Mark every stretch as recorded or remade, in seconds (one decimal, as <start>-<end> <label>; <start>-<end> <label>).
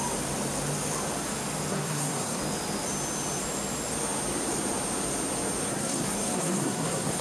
0.0-1.7 recorded; 1.7-2.4 remade; 2.4-5.7 recorded; 5.7-7.2 remade